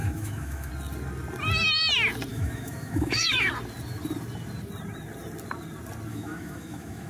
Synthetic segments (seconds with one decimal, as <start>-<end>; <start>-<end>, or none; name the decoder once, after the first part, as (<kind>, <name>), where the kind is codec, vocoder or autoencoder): 0.0-0.7 (autoencoder, DAC-VAE); 2.3-3.5; 6.1-7.1